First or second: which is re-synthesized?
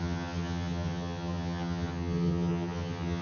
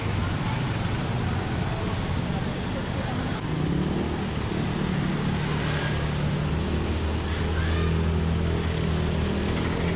first